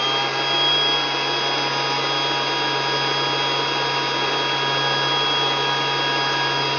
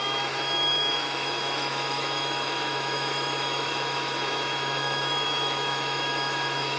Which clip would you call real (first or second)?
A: first